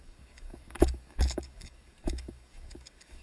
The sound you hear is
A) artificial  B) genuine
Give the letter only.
A